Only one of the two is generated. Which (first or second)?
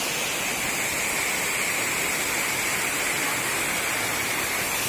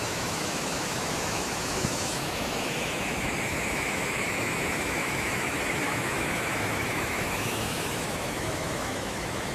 second